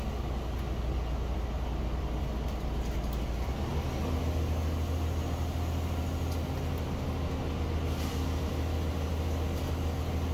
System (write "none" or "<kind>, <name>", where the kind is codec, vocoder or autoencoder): none